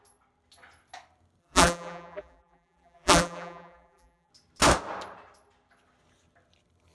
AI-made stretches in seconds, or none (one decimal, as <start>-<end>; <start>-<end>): 1.4-4.3